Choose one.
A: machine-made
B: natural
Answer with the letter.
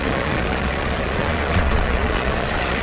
A